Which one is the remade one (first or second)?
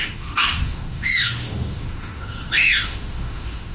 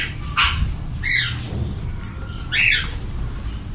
first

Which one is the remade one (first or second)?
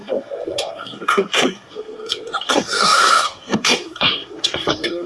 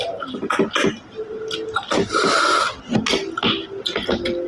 first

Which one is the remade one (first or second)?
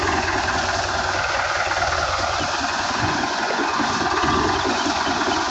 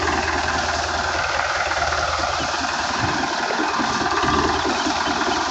first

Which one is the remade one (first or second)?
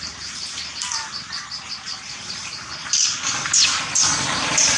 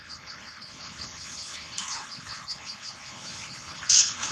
second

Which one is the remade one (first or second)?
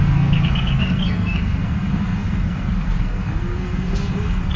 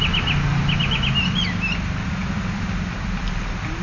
first